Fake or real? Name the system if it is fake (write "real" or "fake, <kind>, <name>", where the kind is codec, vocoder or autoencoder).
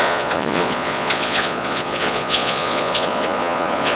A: fake, vocoder, Vocos